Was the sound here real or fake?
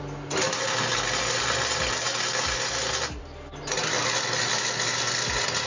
real